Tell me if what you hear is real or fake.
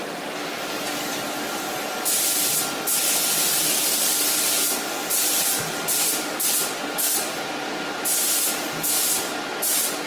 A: real